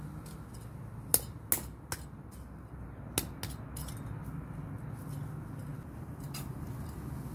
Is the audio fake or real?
real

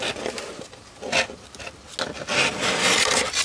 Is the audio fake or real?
real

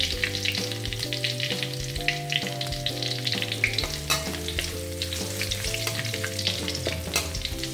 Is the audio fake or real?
real